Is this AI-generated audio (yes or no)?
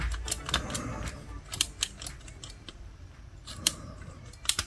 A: yes